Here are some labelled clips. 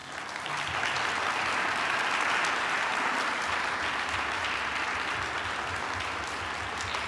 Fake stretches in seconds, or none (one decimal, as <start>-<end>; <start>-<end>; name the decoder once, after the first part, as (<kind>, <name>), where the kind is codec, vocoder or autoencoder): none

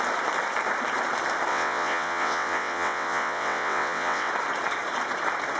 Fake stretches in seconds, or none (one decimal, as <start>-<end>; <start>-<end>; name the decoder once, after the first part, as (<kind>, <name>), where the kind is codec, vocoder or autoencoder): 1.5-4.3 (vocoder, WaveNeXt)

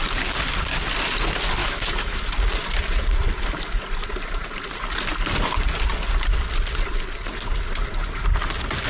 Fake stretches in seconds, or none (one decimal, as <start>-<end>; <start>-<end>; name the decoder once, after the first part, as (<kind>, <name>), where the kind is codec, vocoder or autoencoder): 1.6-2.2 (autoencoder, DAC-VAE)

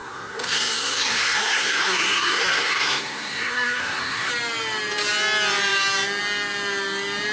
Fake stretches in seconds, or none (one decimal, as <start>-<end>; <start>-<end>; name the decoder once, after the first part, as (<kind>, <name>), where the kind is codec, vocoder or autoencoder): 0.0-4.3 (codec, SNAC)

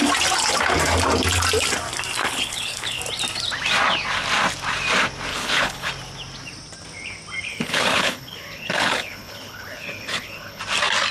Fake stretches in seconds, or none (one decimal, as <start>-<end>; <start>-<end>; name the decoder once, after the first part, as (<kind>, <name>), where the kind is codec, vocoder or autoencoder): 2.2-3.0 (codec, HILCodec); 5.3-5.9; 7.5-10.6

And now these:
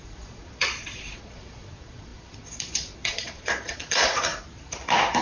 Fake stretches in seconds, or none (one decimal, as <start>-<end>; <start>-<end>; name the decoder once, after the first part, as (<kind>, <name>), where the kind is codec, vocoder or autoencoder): 0.0-4.3 (vocoder, Vocos)

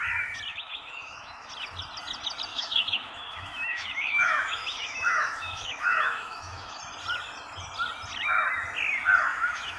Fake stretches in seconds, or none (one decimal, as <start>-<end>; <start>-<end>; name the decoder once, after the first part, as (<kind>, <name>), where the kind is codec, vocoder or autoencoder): 0.5-1.5 (autoencoder, DAC-VAE); 2.5-6.8; 9.3-9.8

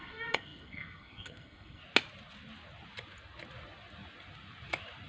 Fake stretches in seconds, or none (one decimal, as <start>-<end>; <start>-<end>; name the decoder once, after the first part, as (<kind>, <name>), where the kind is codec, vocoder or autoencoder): 0.0-1.8 (codec, SNAC)